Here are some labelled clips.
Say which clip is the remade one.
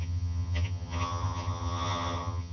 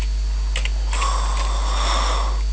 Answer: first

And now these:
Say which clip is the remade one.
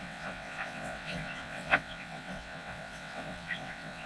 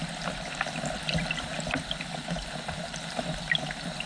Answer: first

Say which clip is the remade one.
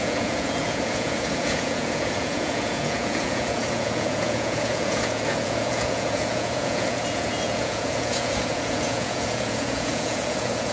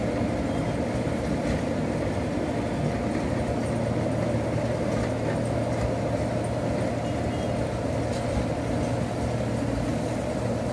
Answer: first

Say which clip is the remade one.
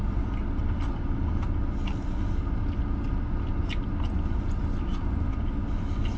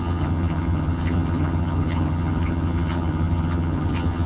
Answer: second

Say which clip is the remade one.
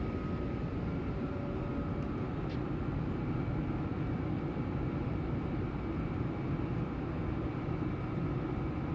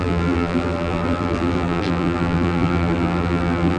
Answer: second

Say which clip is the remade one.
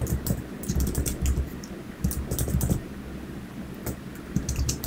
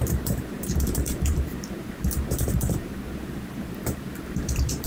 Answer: second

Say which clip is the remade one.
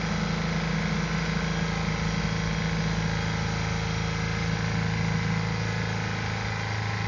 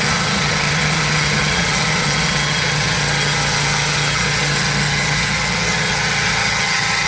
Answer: second